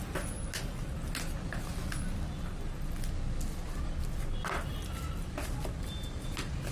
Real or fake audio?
real